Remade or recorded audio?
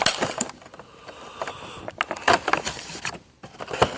remade